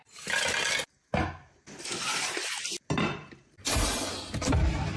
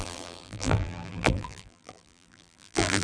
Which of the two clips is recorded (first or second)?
first